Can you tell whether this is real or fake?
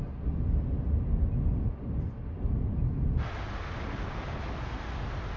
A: real